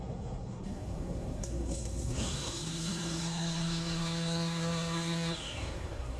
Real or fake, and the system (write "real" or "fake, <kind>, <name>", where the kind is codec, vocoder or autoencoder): fake, codec, SNAC